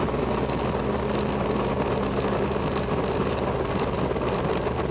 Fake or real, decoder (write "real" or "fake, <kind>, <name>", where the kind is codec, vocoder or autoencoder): real